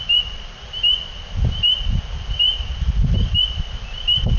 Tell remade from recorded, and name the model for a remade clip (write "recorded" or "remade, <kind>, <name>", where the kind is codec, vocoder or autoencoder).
recorded